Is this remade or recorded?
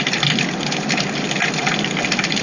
recorded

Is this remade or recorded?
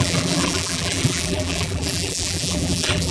remade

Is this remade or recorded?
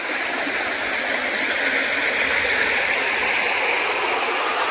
recorded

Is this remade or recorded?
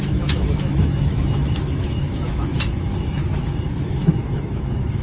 remade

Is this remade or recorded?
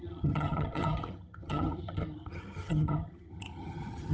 remade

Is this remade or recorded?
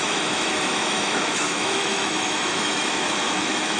remade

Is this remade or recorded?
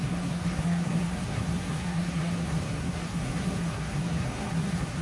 remade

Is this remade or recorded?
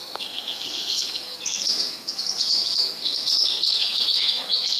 remade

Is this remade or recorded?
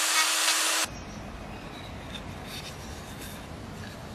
recorded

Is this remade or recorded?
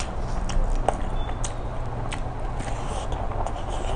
recorded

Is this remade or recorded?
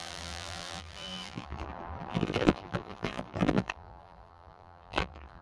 remade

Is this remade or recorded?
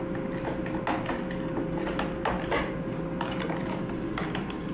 recorded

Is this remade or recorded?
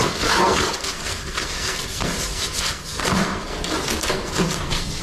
remade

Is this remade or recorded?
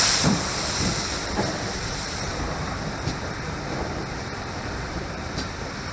remade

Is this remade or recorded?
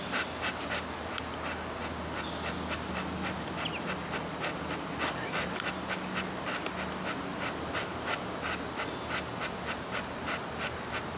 recorded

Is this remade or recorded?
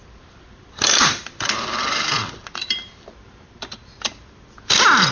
remade